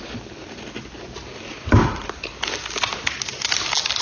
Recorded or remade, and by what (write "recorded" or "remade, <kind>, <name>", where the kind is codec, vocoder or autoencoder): recorded